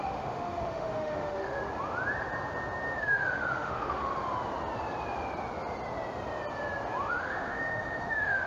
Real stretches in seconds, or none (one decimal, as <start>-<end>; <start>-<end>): 1.6-3.0; 4.1-7.1